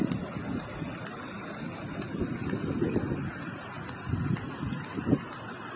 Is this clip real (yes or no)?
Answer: yes